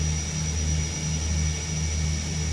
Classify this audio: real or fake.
real